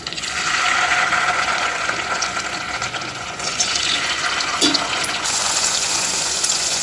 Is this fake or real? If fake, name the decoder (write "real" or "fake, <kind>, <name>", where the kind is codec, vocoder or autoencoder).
fake, vocoder, Vocos